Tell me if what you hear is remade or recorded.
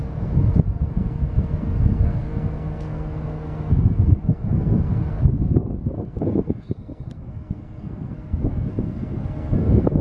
remade